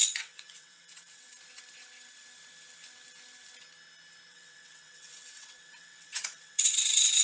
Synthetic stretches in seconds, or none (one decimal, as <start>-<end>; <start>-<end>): 0.0-1.4; 4.3-7.2